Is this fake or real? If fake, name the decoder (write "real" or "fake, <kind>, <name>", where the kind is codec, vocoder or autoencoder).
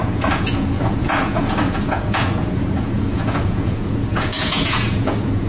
fake, vocoder, Vocos